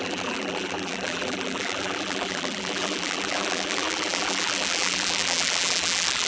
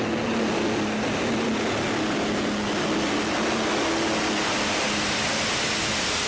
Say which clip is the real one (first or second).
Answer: second